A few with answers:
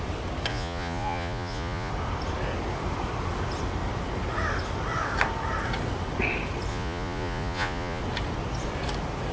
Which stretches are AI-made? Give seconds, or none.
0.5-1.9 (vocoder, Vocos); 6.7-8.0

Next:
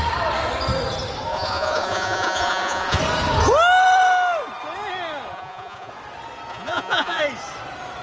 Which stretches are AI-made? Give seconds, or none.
1.3-3.0 (vocoder, Vocos); 5.3-5.9; 6.5-7.2

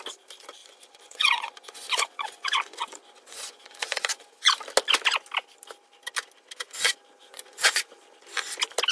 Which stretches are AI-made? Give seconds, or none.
0.6-4.5 (vocoder, Vocos); 7.2-7.9

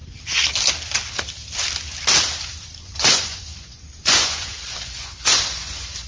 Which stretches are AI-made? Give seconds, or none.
2.8-6.1 (vocoder, Vocos)

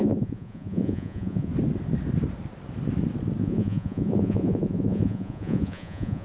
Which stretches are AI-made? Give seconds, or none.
0.0-1.5 (vocoder, Vocos); 3.4-6.2

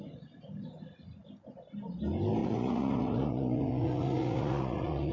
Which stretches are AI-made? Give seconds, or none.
2.4-5.1 (vocoder, Vocos)

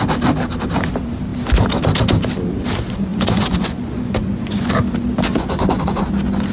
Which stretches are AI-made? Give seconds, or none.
3.1-4.7 (vocoder, Vocos); 5.3-6.0

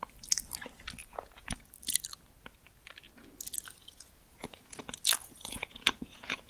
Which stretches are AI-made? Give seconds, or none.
1.0-1.6 (vocoder, Vocos); 3.8-4.8; 5.2-6.5